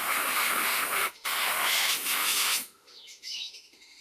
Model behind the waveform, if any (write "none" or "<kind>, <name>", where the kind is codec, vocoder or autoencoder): autoencoder, DAC-VAE